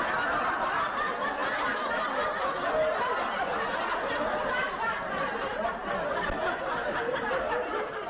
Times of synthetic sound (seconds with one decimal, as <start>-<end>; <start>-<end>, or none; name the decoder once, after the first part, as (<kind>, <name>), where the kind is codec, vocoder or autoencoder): none